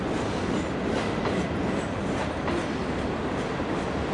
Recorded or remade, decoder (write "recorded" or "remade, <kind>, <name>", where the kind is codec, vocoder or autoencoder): recorded